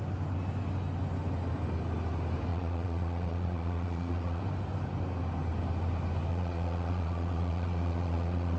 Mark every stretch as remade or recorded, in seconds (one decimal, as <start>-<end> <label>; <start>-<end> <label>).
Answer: 0.0-2.5 recorded; 2.5-4.4 remade; 4.4-6.3 recorded; 6.3-8.6 remade